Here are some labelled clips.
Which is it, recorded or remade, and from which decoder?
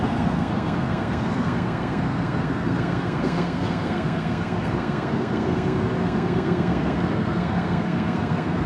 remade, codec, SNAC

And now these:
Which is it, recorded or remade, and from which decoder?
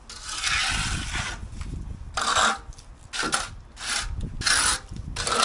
recorded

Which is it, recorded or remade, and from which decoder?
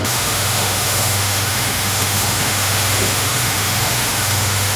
remade, autoencoder, DAC-VAE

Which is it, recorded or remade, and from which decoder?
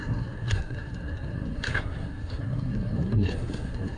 remade, codec, SNAC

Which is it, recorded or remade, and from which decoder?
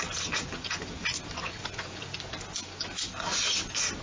recorded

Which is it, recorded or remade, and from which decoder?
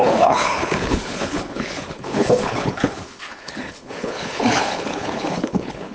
remade, codec, HILCodec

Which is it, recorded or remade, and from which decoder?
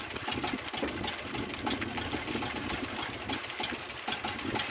recorded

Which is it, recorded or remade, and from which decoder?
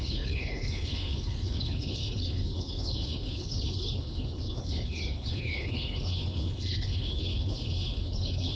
remade, codec, HILCodec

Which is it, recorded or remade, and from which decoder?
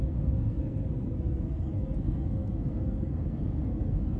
remade, codec, SNAC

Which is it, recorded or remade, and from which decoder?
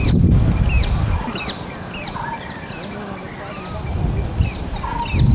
recorded